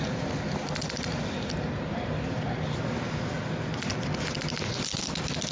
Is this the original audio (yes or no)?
yes